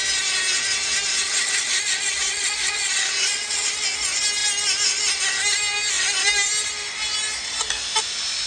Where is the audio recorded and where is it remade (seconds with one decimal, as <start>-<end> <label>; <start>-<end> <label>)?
0.0-1.1 recorded; 1.1-3.7 remade; 3.7-8.5 recorded